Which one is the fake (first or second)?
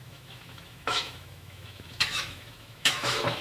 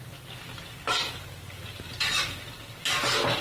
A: first